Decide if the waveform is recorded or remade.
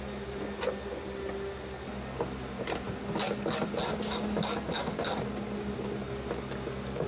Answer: recorded